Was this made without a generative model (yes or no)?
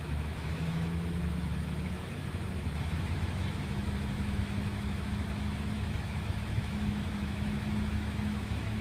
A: no